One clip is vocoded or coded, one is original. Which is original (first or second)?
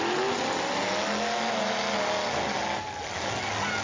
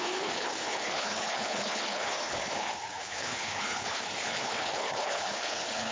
first